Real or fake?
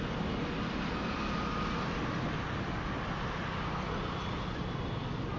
real